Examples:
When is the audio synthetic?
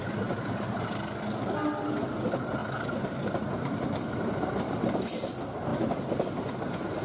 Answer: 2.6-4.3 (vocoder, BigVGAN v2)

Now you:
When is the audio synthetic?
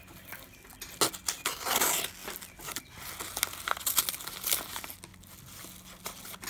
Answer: none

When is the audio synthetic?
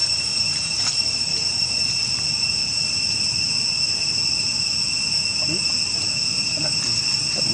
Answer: 0.0-1.9 (vocoder, BigVGAN v2)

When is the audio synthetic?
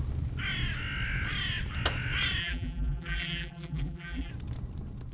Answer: 2.4-4.3 (vocoder, BigVGAN v2)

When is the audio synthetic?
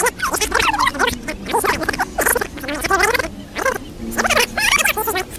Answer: none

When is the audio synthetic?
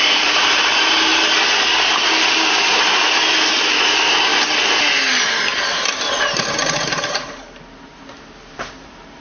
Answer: 0.0-1.1 (vocoder, BigVGAN v2); 3.9-4.3; 6.1-9.2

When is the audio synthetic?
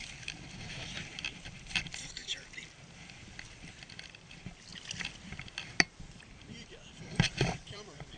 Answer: 0.0-2.2 (vocoder, BigVGAN v2); 4.1-4.7; 5.8-8.2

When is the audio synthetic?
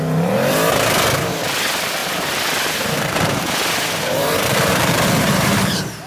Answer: 2.0-6.1 (vocoder, BigVGAN v2)